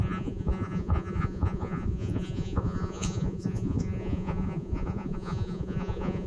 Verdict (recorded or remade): remade